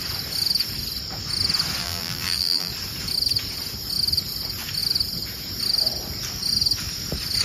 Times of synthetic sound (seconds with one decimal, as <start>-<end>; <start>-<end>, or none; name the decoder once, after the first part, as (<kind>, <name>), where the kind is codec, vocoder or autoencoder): 1.8-2.7 (vocoder, BigVGAN v2)